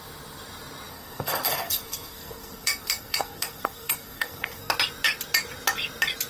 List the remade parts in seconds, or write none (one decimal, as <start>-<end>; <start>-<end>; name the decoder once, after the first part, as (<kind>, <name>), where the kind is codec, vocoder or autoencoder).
0.9-4.7 (codec, SNAC)